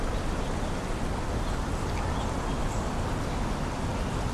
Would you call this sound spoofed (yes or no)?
no